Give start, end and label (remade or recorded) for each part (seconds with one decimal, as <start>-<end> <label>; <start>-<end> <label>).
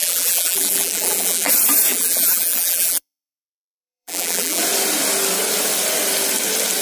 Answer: 0.0-1.5 remade; 1.5-1.9 recorded; 1.9-4.6 remade; 4.6-6.8 recorded